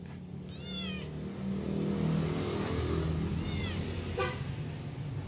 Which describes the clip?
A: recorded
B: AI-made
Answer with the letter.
A